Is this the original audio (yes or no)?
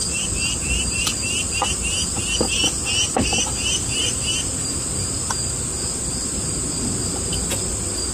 yes